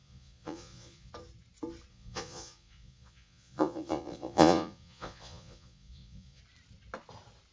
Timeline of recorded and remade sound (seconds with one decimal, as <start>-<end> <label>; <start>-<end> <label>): 0.0-1.1 remade; 1.1-1.9 recorded; 1.9-6.4 remade; 6.4-7.5 recorded